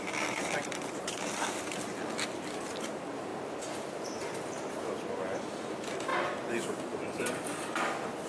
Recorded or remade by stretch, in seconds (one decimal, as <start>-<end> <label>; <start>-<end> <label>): 0.0-8.3 recorded